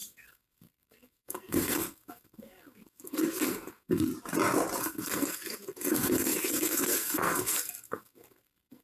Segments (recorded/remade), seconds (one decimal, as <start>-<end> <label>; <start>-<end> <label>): 0.0-4.1 remade; 4.1-4.8 recorded; 4.8-8.8 remade